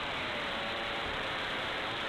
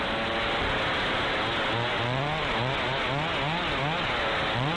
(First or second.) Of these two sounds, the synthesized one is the first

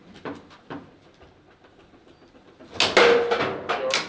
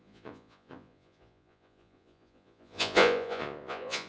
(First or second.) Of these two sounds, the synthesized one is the second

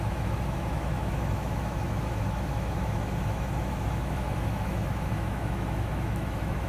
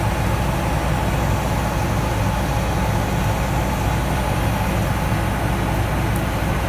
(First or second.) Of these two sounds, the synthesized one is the first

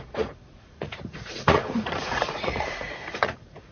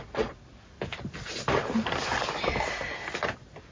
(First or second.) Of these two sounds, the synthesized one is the first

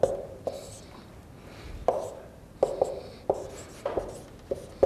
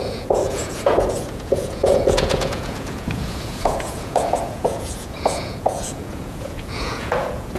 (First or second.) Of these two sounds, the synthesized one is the second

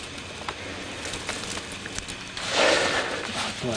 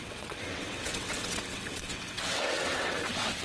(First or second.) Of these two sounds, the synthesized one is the second